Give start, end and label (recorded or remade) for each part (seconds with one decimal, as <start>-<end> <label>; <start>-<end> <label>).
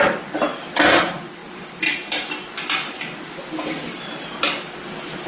0.0-5.3 recorded